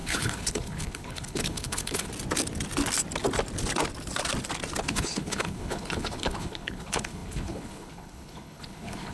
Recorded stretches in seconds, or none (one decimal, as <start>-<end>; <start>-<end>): 2.1-4.8